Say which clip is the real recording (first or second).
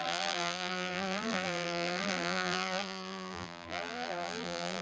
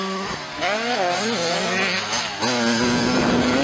second